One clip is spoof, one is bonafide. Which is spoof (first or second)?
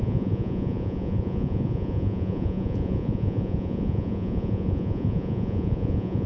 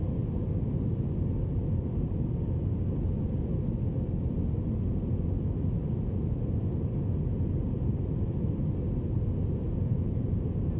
first